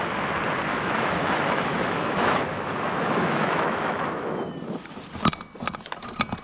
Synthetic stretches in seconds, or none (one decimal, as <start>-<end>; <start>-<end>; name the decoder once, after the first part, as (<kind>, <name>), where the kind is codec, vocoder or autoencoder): 0.7-4.5 (autoencoder, DAC-VAE)